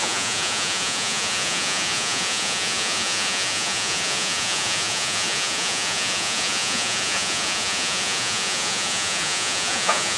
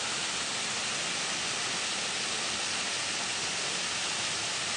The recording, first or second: second